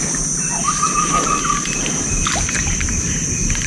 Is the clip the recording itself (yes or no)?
yes